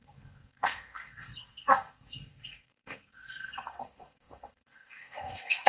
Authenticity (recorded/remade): remade